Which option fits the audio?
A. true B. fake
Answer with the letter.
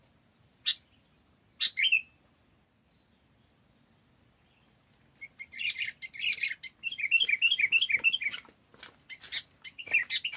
A